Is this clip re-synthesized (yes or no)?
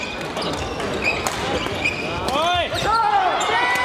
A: no